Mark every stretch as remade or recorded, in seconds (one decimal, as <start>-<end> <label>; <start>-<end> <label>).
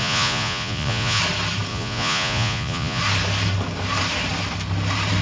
0.0-1.2 remade; 1.2-1.7 recorded; 1.7-3.0 remade; 3.0-5.2 recorded